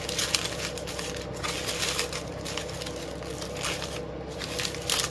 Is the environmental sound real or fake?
real